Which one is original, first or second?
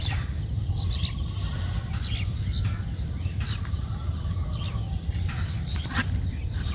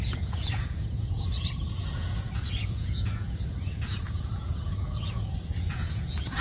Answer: first